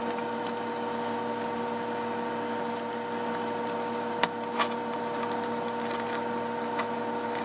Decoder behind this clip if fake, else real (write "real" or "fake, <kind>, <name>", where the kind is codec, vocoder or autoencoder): real